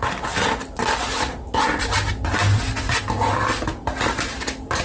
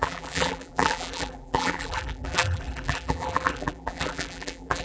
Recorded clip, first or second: first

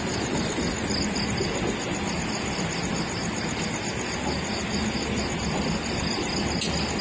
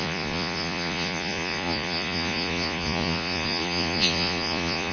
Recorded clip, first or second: first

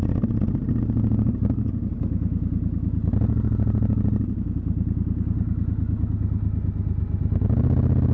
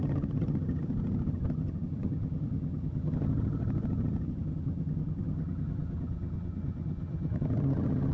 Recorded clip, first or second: first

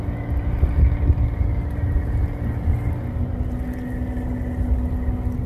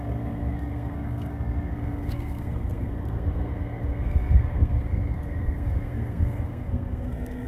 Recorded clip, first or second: first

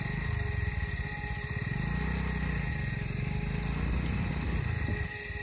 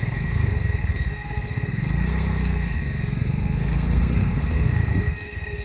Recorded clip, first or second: first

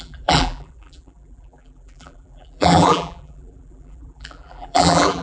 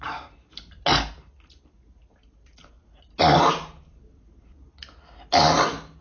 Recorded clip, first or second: second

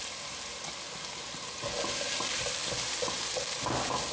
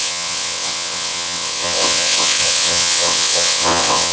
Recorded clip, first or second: first